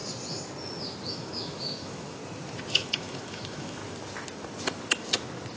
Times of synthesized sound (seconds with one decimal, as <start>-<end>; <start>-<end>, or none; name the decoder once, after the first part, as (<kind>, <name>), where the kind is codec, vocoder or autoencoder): 1.1-2.2 (autoencoder, DAC-VAE); 2.7-3.8